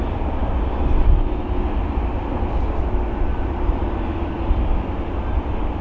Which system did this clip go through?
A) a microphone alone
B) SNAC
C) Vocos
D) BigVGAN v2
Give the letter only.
A